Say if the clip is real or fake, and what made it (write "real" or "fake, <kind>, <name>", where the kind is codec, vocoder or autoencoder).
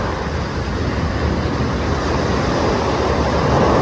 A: real